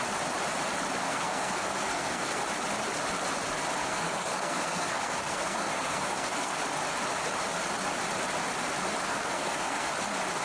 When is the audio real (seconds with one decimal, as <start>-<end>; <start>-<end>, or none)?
0.0-1.0; 2.4-3.8; 6.6-9.0; 9.9-10.4